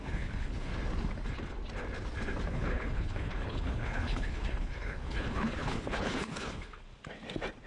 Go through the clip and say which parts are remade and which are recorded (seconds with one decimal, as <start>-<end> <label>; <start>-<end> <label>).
0.0-0.7 remade; 0.7-2.5 recorded; 2.5-6.9 remade; 6.9-7.7 recorded